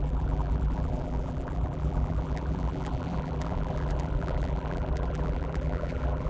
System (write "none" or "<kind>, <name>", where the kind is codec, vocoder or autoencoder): vocoder, BigVGAN v2